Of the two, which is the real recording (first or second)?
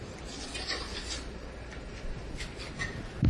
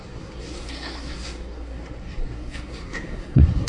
first